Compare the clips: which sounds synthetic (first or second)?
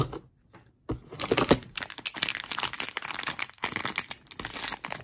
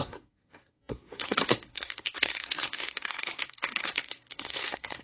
second